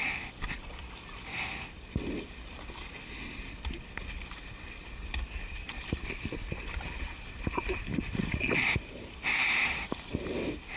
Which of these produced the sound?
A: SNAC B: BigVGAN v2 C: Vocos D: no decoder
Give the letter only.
D